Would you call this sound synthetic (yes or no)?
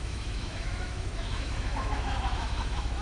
yes